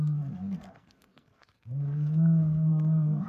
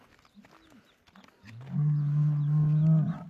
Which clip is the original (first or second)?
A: second